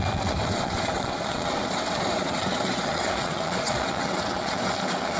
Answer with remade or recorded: remade